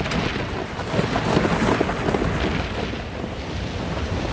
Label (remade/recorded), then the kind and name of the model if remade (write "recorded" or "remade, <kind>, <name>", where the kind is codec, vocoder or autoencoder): recorded